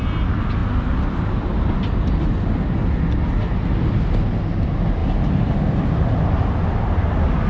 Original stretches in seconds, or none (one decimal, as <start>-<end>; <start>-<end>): 0.0-7.5